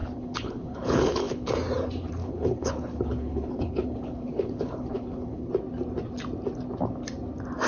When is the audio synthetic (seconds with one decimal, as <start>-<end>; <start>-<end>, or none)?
0.0-1.5; 2.2-5.5

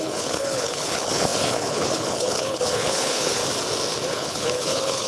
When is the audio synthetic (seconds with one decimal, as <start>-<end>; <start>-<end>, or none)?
0.0-3.4; 4.1-5.1

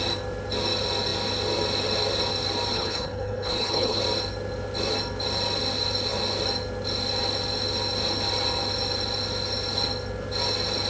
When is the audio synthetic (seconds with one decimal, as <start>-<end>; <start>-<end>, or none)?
2.7-4.0

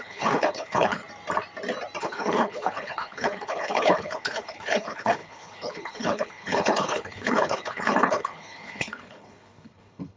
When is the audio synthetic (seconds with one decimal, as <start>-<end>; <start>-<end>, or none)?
0.0-1.0; 2.0-10.2

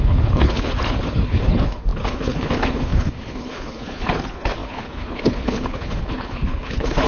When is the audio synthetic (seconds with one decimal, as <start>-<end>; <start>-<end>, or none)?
0.0-7.1

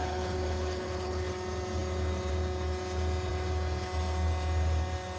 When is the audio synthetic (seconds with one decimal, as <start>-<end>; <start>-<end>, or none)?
0.0-1.3

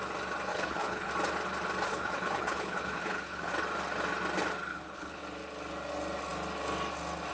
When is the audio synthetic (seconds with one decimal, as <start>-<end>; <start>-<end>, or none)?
0.5-1.1; 1.9-3.5; 4.7-5.2

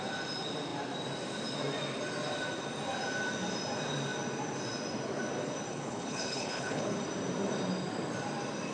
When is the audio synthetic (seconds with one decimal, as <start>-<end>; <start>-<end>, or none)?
5.7-7.0